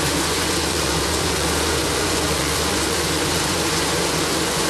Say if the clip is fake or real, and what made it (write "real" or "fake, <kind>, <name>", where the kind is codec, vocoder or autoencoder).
fake, vocoder, Vocos